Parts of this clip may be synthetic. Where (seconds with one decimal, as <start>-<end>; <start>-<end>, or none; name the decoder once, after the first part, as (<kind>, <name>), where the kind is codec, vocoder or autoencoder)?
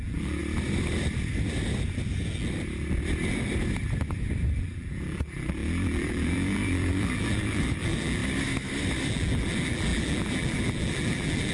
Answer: 0.0-0.4 (vocoder, BigVGAN v2); 4.6-8.2; 9.1-11.5